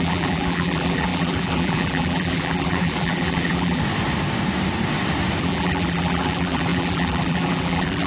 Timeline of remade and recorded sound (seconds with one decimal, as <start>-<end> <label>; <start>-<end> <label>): 0.0-3.8 remade; 3.8-5.4 recorded; 5.4-8.1 remade

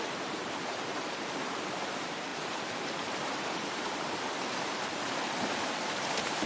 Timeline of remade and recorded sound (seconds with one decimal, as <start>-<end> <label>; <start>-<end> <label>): 0.0-6.5 remade

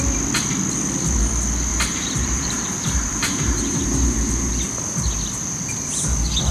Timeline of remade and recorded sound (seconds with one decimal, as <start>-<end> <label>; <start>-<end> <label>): 0.0-1.7 recorded; 1.7-4.5 remade; 4.5-6.5 recorded

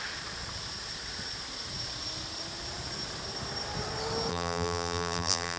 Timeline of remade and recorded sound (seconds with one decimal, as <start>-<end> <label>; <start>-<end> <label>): 0.0-4.3 recorded; 4.3-5.6 remade

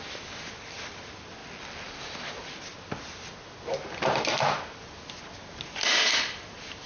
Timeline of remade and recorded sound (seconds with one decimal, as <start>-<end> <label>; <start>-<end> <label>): 0.0-6.9 recorded